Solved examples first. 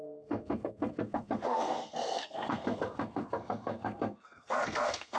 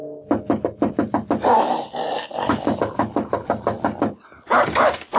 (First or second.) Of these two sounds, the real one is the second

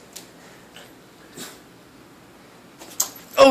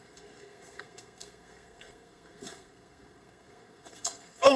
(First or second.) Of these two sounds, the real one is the first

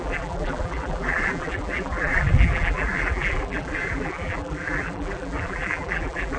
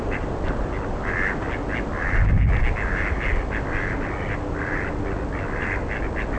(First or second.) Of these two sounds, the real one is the second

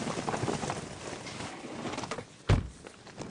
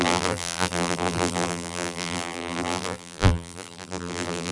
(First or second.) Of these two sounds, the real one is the first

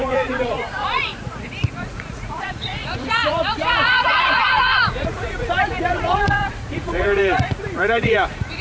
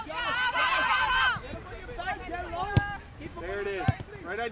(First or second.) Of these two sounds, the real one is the second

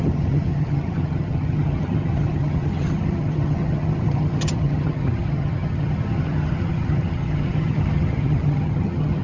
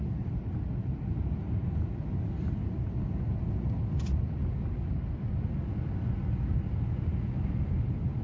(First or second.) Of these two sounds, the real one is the second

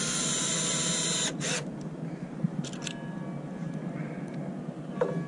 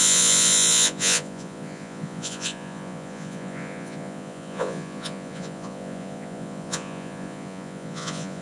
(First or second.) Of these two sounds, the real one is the first